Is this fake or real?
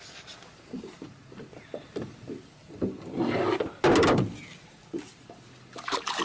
real